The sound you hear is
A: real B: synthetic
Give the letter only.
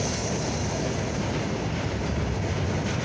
A